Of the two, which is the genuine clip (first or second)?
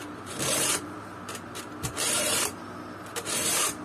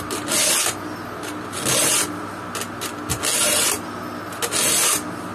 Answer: second